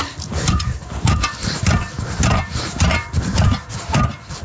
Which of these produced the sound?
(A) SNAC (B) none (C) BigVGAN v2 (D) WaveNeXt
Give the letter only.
C